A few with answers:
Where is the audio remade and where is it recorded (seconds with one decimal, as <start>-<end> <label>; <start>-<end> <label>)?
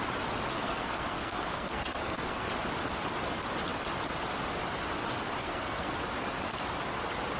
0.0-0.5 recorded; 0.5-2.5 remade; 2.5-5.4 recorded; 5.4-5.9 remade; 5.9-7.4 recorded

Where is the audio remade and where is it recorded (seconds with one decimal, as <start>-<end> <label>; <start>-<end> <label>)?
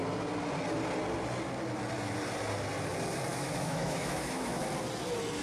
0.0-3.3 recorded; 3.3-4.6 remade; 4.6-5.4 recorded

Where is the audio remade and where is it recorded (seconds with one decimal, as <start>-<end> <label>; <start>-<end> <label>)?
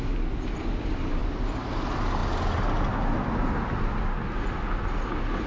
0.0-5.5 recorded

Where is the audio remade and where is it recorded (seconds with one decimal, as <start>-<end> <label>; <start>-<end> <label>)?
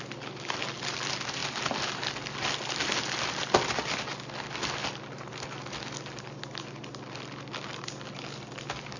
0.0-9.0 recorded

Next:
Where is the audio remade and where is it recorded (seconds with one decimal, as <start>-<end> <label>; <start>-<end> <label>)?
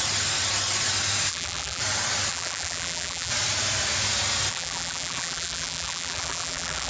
0.0-1.3 recorded; 1.3-1.8 remade; 1.8-2.3 recorded; 2.3-3.3 remade; 3.3-4.5 recorded; 4.5-6.9 remade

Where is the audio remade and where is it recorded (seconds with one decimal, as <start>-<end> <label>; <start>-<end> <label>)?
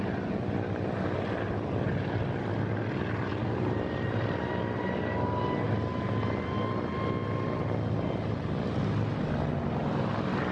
0.0-3.3 recorded; 3.3-4.6 remade; 4.6-10.5 recorded